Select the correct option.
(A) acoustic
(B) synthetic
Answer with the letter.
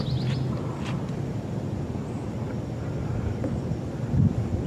A